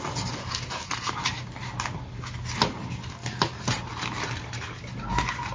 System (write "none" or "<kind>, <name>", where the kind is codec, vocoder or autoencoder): none